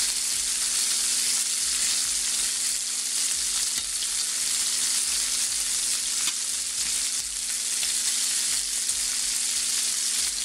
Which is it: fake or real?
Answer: real